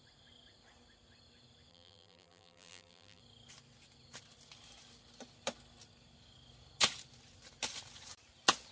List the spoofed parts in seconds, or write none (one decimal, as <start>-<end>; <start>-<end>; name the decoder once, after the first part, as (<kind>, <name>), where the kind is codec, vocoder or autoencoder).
1.7-3.2 (vocoder, BigVGAN v2)